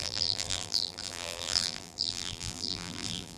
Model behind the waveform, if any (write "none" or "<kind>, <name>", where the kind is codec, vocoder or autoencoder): vocoder, BigVGAN v2